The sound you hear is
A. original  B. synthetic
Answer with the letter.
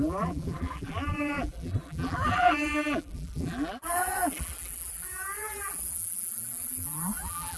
B